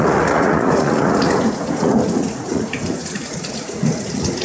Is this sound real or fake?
fake